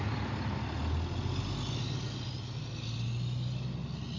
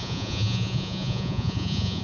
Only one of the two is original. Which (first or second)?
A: first